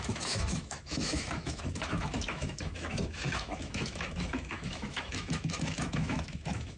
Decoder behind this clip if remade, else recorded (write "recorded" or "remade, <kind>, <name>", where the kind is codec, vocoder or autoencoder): remade, autoencoder, DAC-VAE